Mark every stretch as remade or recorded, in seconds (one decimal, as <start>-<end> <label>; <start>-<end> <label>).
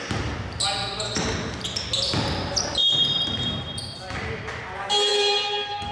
0.0-2.8 recorded; 2.8-4.6 remade; 4.6-5.1 recorded; 5.1-5.9 remade